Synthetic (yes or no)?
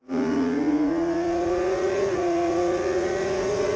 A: yes